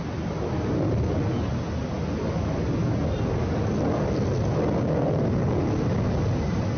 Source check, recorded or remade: recorded